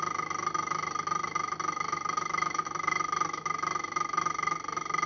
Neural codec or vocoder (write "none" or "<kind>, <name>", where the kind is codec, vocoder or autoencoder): none